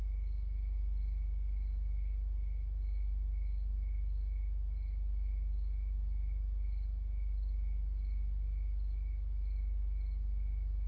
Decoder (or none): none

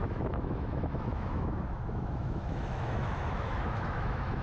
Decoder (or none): autoencoder, DAC-VAE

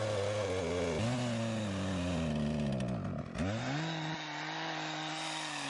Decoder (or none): none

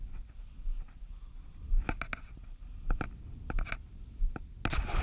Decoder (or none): none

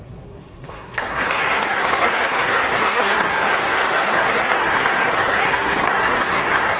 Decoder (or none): codec, SNAC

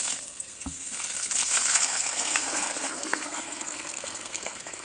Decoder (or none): codec, SNAC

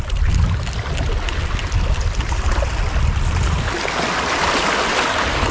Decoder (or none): none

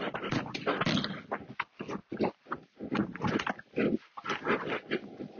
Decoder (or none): none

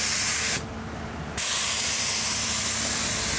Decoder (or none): none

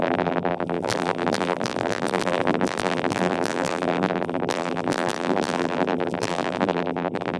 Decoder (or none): vocoder, BigVGAN v2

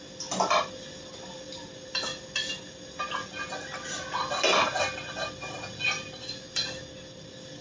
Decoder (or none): none